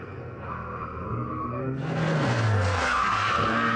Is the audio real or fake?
fake